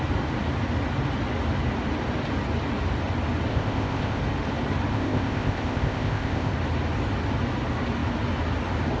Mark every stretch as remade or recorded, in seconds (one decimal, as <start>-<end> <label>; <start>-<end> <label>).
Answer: 0.0-3.5 recorded; 3.5-4.2 remade; 4.2-4.9 recorded; 4.9-6.5 remade; 6.5-9.0 recorded